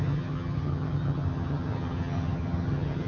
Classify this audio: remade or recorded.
remade